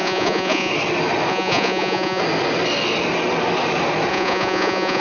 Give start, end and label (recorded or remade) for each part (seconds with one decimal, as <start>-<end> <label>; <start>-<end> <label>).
0.0-0.7 remade; 0.7-1.3 recorded; 1.3-2.2 remade; 2.2-4.1 recorded; 4.1-5.0 remade